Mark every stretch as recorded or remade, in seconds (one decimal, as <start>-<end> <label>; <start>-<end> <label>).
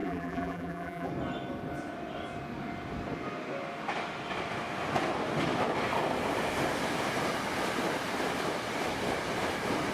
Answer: 0.0-1.1 remade; 1.1-9.9 recorded